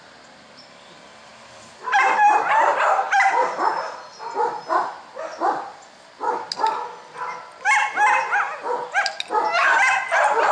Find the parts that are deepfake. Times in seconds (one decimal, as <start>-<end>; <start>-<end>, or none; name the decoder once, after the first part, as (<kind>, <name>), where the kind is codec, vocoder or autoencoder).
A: none